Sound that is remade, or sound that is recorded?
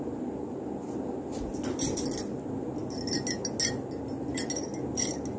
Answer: recorded